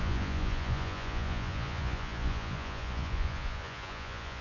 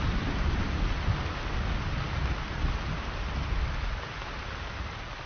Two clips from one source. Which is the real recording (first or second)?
second